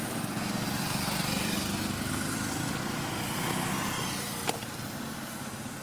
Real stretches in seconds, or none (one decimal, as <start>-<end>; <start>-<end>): 0.0-5.8